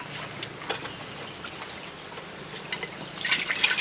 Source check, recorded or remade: recorded